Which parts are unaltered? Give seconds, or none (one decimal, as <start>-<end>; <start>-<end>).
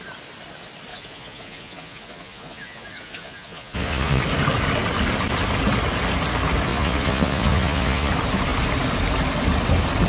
0.0-0.9; 4.2-6.7; 8.1-10.1